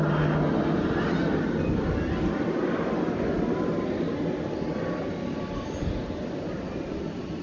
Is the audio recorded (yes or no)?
yes